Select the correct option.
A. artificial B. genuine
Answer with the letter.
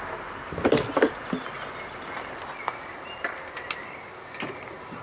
B